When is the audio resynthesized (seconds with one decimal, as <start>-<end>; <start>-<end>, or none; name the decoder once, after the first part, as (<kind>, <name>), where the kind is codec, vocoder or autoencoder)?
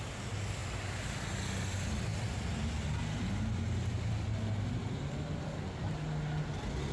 none